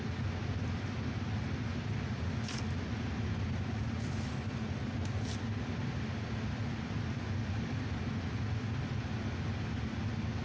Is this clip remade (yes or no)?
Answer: no